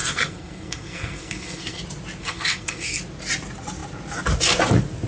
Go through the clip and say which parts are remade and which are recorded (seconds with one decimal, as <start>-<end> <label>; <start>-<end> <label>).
0.0-1.8 remade; 1.8-2.2 recorded; 2.2-3.0 remade; 3.0-5.1 recorded